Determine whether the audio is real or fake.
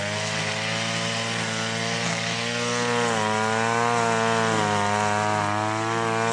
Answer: real